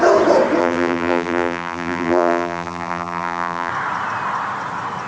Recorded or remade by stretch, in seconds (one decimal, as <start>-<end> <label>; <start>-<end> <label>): 0.0-0.6 recorded; 0.6-3.7 remade; 3.7-5.1 recorded